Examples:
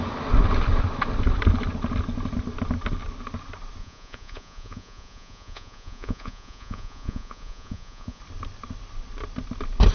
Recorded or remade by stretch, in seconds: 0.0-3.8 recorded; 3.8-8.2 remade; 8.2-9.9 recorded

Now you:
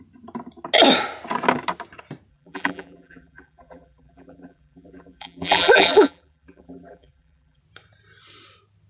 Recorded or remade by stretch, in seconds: 0.0-2.3 recorded; 2.3-7.6 remade; 7.6-8.9 recorded

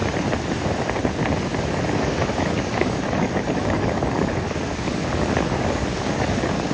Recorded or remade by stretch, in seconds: 0.0-1.6 recorded; 1.6-6.7 remade

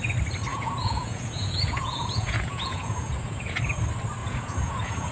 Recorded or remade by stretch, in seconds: 0.0-0.5 recorded; 0.5-3.6 remade; 3.6-4.2 recorded; 4.2-5.1 remade

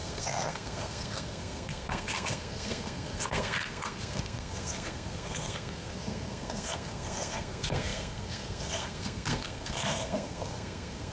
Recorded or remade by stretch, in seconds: 0.0-11.1 remade

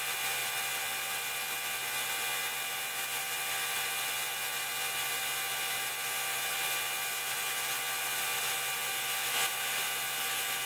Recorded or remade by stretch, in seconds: 0.0-10.7 recorded

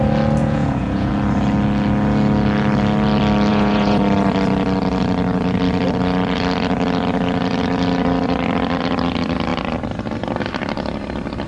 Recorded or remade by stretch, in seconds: 0.0-0.4 recorded; 0.4-1.1 remade; 1.1-3.5 recorded; 3.5-4.0 remade; 4.0-11.5 recorded

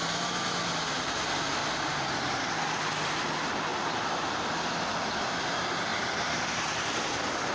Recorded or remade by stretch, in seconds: 0.0-1.6 recorded; 1.6-2.5 remade; 2.5-5.9 recorded; 5.9-6.9 remade; 6.9-7.5 recorded